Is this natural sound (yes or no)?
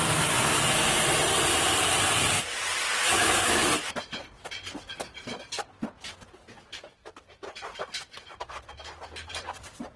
yes